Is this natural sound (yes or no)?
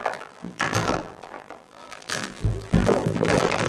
no